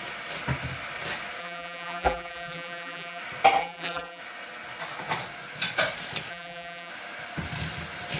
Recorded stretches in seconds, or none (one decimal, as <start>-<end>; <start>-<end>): 0.0-1.4; 3.2-3.6; 4.2-6.3; 6.9-8.2